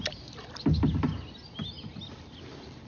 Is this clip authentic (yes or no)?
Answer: yes